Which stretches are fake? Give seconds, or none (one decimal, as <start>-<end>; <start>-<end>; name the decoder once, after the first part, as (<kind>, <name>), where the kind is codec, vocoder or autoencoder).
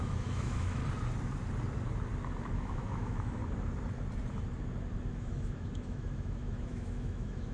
0.0-0.8 (autoencoder, DAC-VAE); 2.4-3.4; 5.0-7.5